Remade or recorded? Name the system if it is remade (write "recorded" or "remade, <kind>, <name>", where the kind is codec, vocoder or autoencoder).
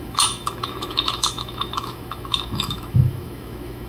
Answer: remade, autoencoder, DAC-VAE